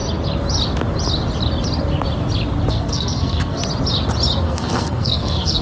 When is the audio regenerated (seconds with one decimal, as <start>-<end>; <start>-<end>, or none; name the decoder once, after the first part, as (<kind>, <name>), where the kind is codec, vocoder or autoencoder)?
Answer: 2.7-3.6 (codec, SNAC); 4.4-5.6